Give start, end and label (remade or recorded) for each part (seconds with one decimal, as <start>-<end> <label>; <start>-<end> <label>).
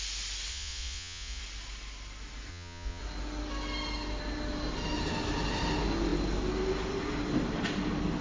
0.0-0.5 recorded; 0.5-1.4 remade; 1.4-2.5 recorded; 2.5-3.0 remade; 3.0-8.2 recorded